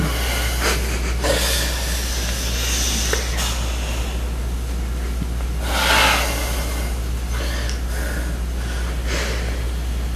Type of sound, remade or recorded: recorded